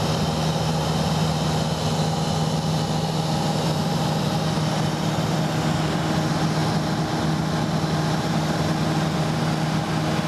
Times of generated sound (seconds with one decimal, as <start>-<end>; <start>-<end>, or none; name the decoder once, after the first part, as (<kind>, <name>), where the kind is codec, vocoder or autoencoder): none

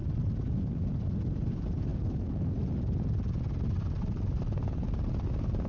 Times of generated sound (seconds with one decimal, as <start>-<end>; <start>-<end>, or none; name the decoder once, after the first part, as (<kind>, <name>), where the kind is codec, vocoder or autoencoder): none